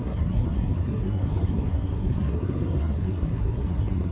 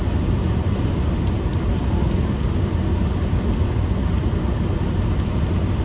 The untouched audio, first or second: second